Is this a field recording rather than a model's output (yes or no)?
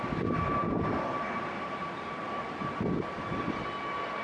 yes